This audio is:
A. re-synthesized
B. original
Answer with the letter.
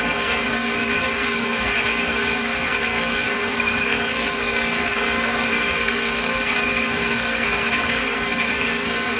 A